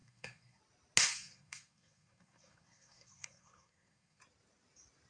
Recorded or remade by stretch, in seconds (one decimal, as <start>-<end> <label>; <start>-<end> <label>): 0.0-0.6 remade; 0.6-1.1 recorded; 1.1-4.2 remade; 4.2-5.1 recorded